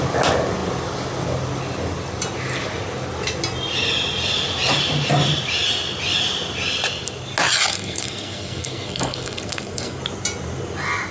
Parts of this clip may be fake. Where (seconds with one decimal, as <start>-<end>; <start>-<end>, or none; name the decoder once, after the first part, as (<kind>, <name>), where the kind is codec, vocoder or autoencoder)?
7.7-10.0 (codec, SNAC)